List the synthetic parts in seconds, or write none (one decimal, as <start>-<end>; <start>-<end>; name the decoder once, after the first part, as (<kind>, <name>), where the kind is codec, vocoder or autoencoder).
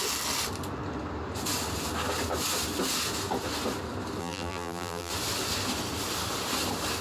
4.2-5.1 (vocoder, BigVGAN v2)